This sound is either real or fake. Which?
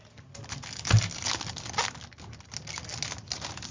real